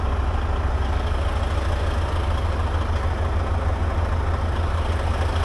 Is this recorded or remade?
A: recorded